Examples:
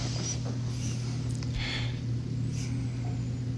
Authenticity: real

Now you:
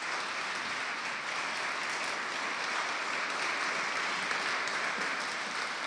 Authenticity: real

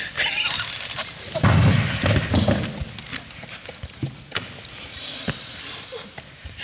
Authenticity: real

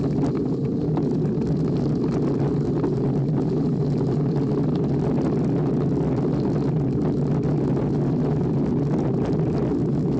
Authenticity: real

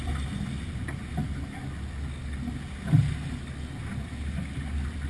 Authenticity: real